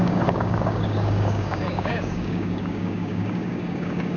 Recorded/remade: remade